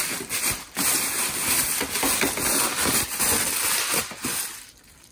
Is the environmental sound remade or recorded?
recorded